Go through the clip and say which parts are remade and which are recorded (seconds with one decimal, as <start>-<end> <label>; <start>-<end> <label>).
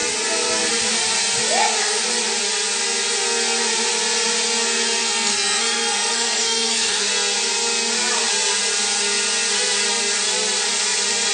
0.0-5.0 recorded; 5.0-7.1 remade; 7.1-11.3 recorded